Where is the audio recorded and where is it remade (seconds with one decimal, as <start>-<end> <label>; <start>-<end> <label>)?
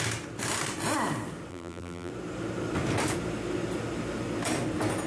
0.0-1.5 recorded; 1.5-2.1 remade; 2.1-5.1 recorded